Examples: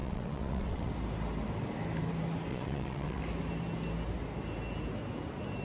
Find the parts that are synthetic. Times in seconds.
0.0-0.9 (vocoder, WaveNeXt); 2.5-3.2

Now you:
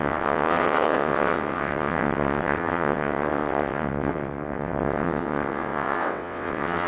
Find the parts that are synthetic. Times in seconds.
0.0-6.9 (vocoder, WaveNeXt)

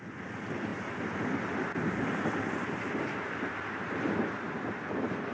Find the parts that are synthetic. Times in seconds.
none

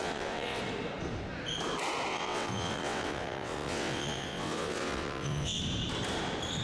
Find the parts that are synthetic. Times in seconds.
0.0-0.6 (vocoder, WaveNeXt); 2.1-5.6

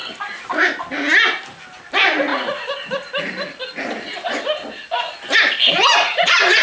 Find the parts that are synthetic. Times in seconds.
none

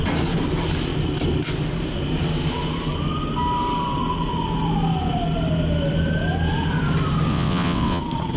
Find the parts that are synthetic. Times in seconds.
7.3-8.0 (vocoder, WaveNeXt)

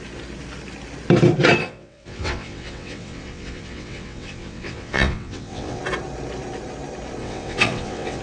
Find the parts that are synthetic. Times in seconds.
1.6-5.8 (vocoder, WaveNeXt); 7.2-8.2

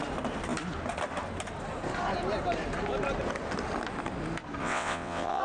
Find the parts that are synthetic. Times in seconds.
4.6-5.4 (vocoder, WaveNeXt)